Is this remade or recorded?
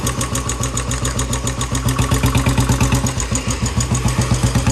recorded